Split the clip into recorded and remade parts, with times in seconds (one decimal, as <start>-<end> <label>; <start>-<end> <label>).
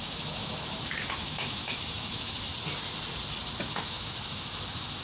0.0-2.5 remade; 2.5-3.7 recorded; 3.7-5.0 remade